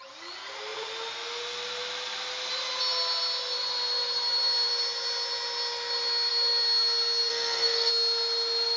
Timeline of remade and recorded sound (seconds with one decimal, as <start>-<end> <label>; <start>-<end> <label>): 0.0-7.3 recorded; 7.3-7.9 remade; 7.9-8.8 recorded